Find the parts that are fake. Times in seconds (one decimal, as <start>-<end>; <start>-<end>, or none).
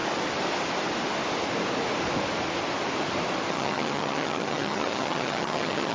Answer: 3.5-5.9